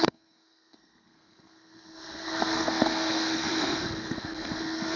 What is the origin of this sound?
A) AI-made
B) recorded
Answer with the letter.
A